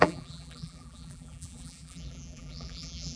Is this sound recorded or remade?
remade